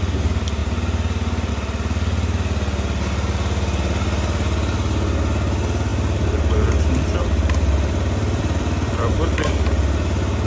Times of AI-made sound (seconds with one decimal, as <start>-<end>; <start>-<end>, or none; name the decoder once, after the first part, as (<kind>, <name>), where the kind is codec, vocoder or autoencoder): 5.9-9.4 (vocoder, BigVGAN v2)